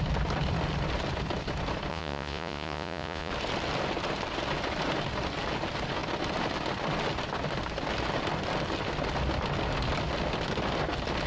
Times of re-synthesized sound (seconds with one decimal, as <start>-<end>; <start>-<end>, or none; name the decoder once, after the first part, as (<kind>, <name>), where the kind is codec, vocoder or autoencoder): 1.9-3.3 (vocoder, Vocos)